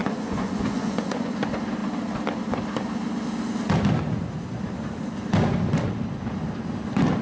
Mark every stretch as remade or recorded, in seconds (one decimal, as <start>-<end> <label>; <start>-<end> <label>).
0.0-1.3 remade; 1.3-7.2 recorded